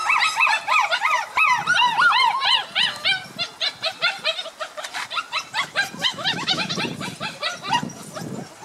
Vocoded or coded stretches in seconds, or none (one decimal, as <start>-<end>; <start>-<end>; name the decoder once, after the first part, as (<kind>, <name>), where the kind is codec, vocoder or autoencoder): 6.1-6.7 (autoencoder, DAC-VAE)